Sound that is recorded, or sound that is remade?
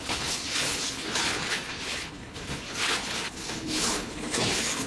remade